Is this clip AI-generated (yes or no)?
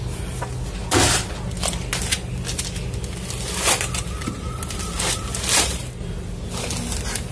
no